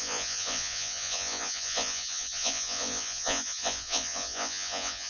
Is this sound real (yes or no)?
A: no